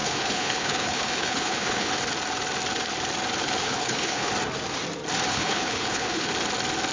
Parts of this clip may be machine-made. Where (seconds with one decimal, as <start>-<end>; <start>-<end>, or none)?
0.0-1.9; 3.6-4.3; 5.3-6.3